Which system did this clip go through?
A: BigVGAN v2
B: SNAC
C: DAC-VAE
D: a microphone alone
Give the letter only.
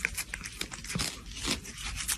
D